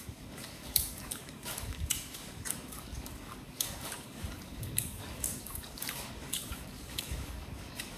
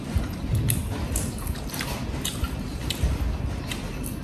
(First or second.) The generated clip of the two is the first